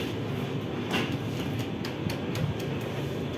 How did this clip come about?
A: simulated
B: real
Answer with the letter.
B